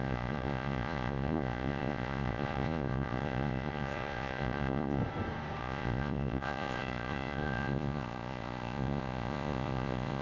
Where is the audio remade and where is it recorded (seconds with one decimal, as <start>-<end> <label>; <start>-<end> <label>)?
0.0-5.0 remade; 5.0-5.6 recorded; 5.6-10.2 remade